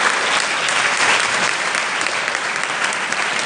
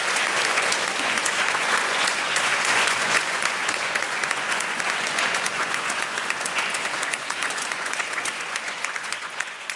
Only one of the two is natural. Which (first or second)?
first